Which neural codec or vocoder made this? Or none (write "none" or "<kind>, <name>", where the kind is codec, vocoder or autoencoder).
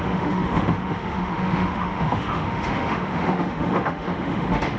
autoencoder, DAC-VAE